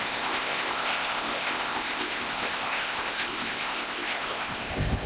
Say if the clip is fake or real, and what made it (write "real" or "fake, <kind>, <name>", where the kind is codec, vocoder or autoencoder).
fake, codec, ZipCodec